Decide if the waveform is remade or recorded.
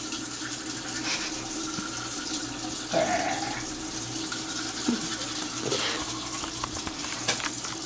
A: recorded